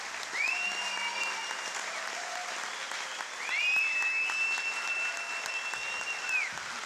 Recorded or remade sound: recorded